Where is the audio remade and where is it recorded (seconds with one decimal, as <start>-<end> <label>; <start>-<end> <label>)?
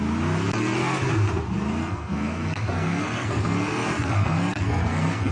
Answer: 0.0-0.5 recorded; 0.5-1.1 remade; 1.1-1.8 recorded; 1.8-5.3 remade